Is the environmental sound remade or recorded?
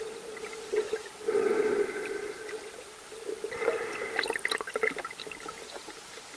recorded